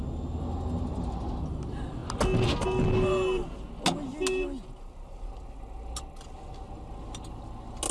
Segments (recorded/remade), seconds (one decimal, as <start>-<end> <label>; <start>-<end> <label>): 0.0-7.9 recorded